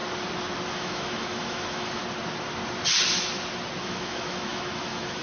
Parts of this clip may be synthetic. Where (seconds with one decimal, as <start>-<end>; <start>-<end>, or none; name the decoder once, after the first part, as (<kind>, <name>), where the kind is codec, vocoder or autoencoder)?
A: 0.7-2.0 (autoencoder, DAC-VAE); 3.8-5.2